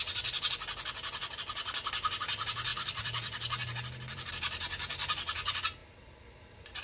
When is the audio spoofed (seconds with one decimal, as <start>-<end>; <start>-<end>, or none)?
2.7-4.3; 5.8-6.8